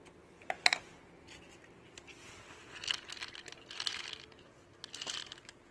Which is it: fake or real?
real